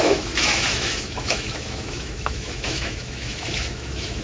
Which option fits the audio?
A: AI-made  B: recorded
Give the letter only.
A